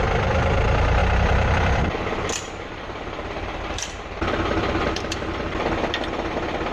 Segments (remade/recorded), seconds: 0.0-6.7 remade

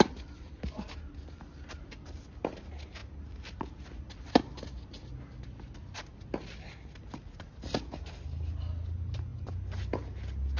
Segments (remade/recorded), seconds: 0.0-10.6 recorded

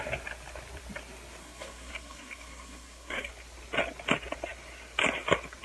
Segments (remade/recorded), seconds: 0.0-1.4 recorded; 1.4-3.3 remade; 3.3-5.6 recorded

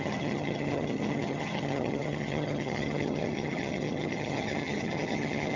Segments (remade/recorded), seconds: 0.0-5.6 remade

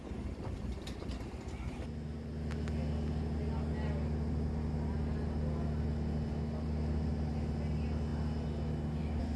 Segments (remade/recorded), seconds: 0.0-9.4 recorded

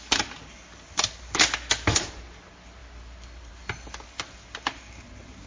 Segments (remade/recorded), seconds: 0.0-5.5 recorded